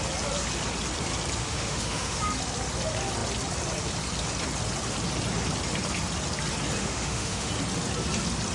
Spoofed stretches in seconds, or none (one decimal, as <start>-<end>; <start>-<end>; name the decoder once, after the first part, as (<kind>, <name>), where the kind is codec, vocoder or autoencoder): 1.4-2.2 (autoencoder, DAC-VAE); 6.8-7.5